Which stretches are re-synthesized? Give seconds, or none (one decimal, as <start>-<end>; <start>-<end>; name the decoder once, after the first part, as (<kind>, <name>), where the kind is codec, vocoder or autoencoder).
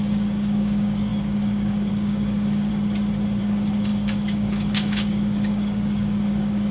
0.0-2.7 (codec, DAC); 3.4-6.7